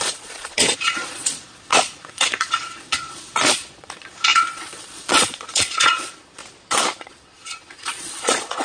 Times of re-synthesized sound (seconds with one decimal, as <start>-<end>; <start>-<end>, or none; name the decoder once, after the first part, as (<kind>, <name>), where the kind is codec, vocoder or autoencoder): 0.0-6.4 (vocoder, Vocos); 7.0-8.6